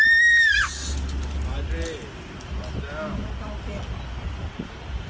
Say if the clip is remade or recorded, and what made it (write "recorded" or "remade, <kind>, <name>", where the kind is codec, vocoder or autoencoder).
recorded